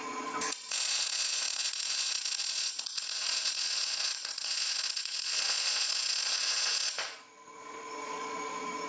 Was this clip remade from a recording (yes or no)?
yes